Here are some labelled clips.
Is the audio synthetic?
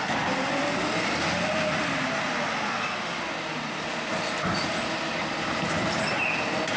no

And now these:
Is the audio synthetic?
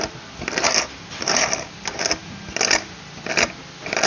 no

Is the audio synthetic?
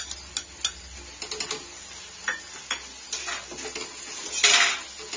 no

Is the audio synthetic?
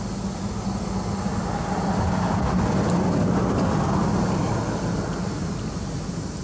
no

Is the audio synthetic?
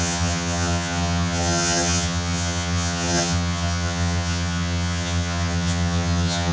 yes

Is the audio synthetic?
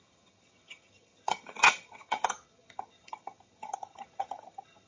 yes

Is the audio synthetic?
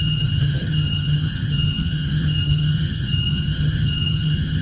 yes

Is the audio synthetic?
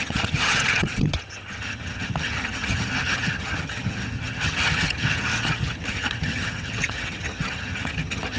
yes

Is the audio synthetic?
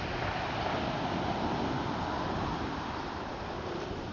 no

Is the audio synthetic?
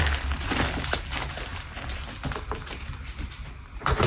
no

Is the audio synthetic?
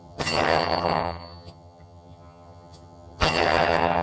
yes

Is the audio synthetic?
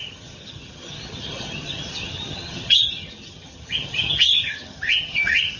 yes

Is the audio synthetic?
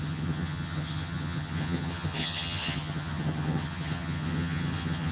yes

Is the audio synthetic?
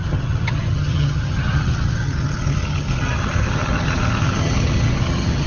yes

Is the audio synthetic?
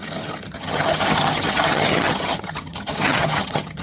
yes